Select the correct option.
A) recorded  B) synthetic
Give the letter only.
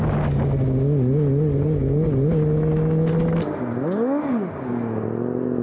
A